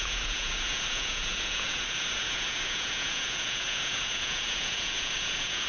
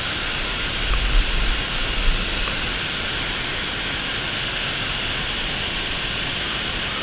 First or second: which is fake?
first